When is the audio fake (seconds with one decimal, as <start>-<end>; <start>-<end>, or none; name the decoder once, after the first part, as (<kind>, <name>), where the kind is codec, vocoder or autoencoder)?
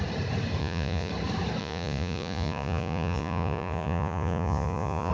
0.6-1.1 (vocoder, Vocos); 1.6-5.1